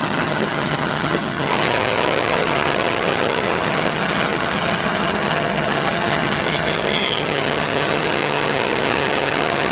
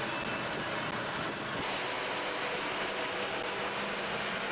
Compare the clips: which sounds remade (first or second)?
first